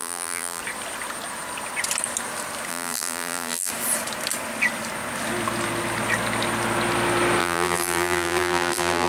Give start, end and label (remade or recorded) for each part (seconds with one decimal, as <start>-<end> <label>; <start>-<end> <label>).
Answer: 0.0-0.6 remade; 0.6-2.7 recorded; 2.7-3.7 remade; 3.7-7.4 recorded; 7.4-9.1 remade